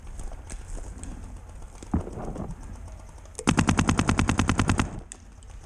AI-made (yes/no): no